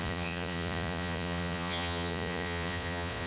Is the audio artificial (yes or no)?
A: yes